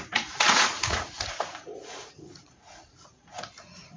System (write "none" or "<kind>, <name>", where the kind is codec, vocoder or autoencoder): vocoder, Vocos